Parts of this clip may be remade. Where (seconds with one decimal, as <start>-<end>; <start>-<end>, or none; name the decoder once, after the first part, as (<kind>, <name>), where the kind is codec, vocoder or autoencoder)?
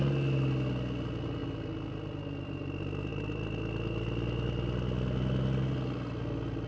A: none